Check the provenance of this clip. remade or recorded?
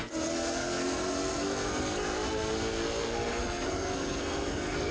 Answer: remade